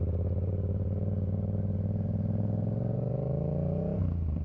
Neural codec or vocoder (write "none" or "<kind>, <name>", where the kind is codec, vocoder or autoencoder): vocoder, BigVGAN v2